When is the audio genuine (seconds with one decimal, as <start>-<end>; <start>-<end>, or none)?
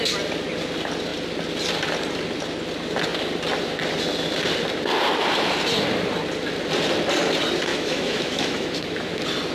0.0-7.7; 9.1-9.5